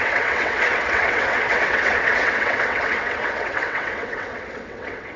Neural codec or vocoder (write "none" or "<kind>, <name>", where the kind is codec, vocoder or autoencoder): vocoder, WaveNeXt